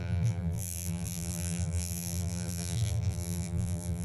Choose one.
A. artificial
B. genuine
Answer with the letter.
A